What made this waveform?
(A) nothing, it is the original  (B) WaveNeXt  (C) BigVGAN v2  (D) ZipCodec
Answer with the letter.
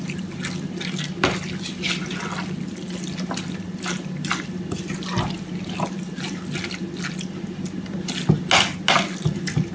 A